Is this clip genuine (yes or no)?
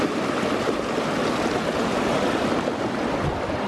yes